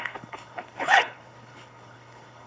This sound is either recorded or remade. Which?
remade